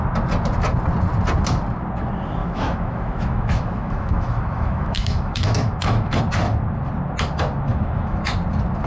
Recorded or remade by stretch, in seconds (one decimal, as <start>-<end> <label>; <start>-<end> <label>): 0.0-2.4 recorded; 2.4-6.2 remade; 6.2-7.7 recorded; 7.7-8.3 remade; 8.3-8.9 recorded